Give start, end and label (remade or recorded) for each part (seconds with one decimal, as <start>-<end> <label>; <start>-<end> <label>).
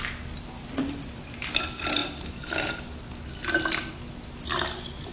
0.0-5.1 recorded